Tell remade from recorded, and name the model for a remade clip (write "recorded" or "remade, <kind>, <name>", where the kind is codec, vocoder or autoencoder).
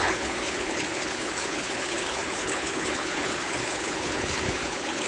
remade, codec, HILCodec